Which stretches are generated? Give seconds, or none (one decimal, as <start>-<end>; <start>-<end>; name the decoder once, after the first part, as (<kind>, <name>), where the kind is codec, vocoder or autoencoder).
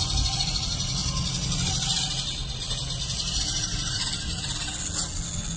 none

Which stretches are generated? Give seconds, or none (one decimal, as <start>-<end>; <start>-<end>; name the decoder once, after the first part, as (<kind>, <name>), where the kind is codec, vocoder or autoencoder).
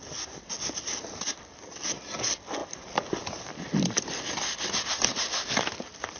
none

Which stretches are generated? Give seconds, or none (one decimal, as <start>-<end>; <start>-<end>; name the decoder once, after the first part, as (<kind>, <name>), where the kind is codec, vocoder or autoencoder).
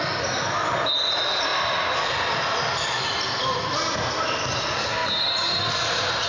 none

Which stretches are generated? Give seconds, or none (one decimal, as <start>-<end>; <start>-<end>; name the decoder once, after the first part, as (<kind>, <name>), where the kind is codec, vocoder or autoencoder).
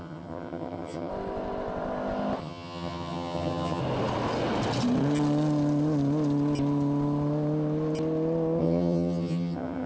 0.0-1.1 (vocoder, HiFi-GAN); 2.4-3.8; 8.6-9.9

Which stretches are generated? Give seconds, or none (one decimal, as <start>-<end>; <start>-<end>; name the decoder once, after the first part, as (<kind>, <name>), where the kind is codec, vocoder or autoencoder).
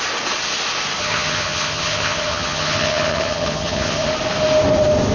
1.0-4.1 (vocoder, HiFi-GAN)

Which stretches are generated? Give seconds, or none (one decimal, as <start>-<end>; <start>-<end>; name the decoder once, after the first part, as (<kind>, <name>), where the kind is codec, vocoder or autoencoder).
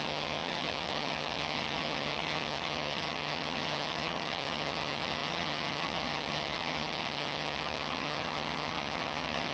0.0-9.5 (vocoder, HiFi-GAN)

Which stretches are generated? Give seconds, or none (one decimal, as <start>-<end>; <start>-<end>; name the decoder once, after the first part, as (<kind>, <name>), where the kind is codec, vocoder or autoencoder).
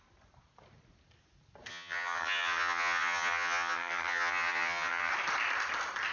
1.7-5.1 (vocoder, HiFi-GAN)